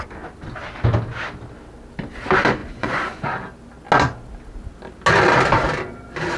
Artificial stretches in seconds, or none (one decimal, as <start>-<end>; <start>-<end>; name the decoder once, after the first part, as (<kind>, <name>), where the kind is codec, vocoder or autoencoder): 2.6-3.3 (vocoder, Vocos)